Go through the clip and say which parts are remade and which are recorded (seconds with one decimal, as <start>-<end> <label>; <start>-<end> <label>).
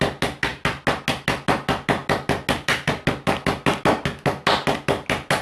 0.0-5.4 recorded